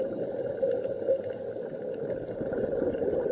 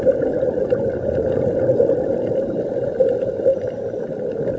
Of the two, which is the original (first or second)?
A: first